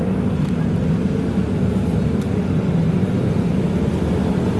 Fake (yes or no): no